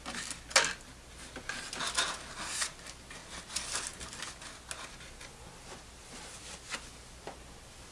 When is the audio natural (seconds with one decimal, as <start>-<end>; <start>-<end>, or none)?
0.0-7.9

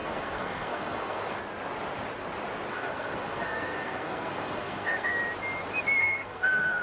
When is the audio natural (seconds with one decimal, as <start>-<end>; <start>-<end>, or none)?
1.4-2.7; 5.2-6.0

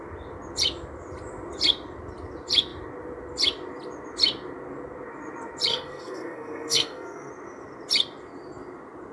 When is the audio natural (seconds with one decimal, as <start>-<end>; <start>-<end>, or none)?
0.0-5.7; 7.3-9.1